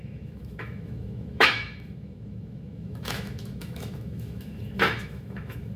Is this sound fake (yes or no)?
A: yes